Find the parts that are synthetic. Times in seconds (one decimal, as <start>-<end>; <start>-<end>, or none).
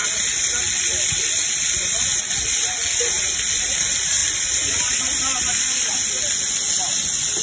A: none